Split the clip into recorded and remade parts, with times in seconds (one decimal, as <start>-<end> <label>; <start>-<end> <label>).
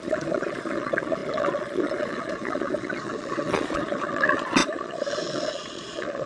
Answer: 0.0-6.3 remade